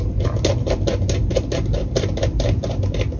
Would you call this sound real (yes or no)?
yes